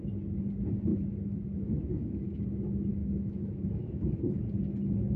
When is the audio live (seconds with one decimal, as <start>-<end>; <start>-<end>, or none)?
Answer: 0.0-0.9; 2.4-3.0; 4.0-5.2